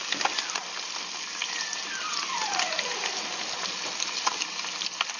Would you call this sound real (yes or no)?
yes